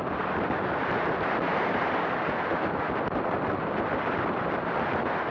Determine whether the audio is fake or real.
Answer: real